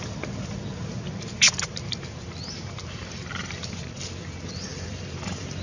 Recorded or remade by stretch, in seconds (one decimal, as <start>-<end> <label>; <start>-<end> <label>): 0.0-4.7 recorded; 4.7-5.6 remade